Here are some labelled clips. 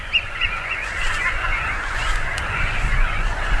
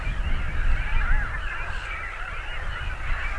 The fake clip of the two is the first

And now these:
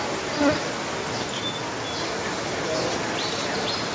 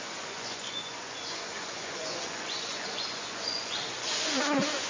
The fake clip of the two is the second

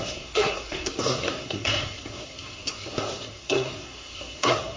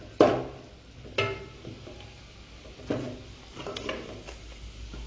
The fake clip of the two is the first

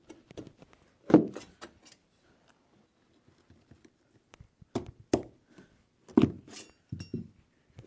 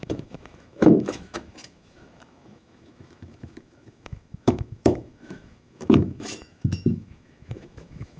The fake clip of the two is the second